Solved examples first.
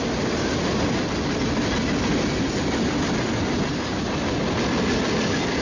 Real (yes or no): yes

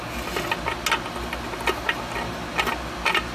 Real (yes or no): yes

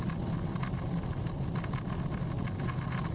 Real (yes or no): yes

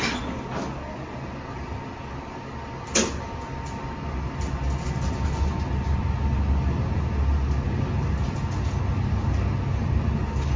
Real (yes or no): yes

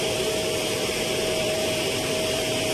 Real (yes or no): no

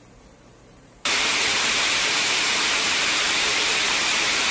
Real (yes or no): no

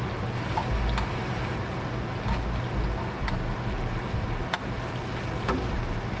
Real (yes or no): yes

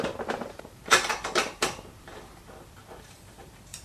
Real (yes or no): no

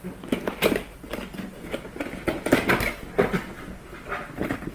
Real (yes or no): yes